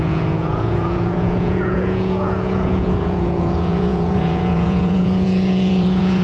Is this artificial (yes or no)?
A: yes